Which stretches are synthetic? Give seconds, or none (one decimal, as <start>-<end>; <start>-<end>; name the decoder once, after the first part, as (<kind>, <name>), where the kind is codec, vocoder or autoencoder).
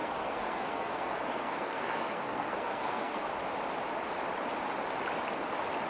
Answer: 0.0-3.3 (codec, SNAC)